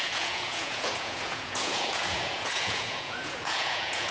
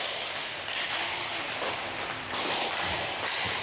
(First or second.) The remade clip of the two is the first